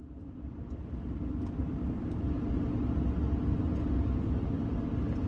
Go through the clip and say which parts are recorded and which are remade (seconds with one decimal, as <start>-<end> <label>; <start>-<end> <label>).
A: 0.0-5.3 recorded

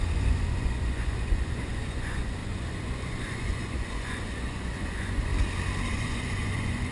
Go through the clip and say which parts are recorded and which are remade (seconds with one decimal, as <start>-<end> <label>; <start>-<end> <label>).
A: 0.0-5.3 remade; 5.3-5.9 recorded; 5.9-6.9 remade

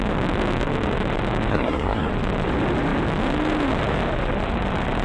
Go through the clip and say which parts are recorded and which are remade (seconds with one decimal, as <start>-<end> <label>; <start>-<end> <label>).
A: 0.0-1.5 recorded; 1.5-2.1 remade; 2.1-5.0 recorded